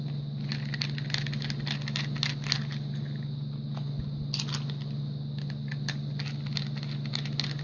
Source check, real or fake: real